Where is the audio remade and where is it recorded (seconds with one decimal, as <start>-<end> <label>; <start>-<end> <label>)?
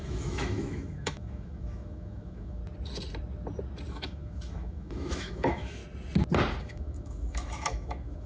0.0-2.6 remade; 2.6-3.9 recorded; 3.9-5.8 remade; 5.8-6.6 recorded; 6.6-8.3 remade